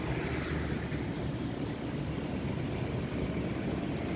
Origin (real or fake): real